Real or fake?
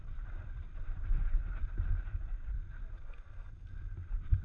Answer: fake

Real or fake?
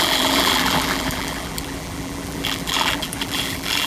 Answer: fake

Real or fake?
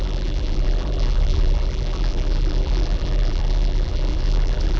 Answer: fake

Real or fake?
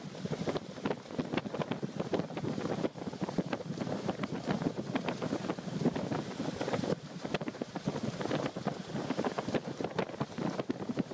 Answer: real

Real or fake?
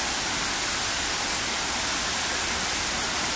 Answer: real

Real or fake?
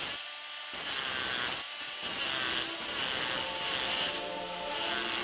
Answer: real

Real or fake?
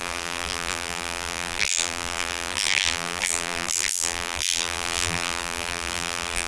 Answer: fake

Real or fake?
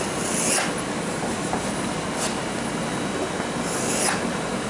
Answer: real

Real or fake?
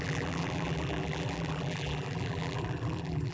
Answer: fake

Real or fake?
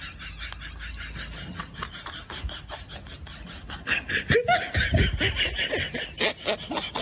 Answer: real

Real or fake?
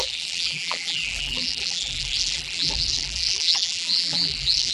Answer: fake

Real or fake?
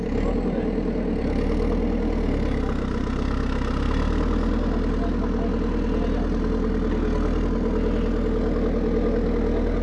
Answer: real